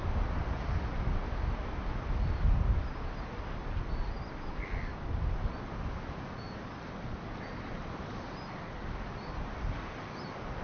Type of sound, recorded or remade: recorded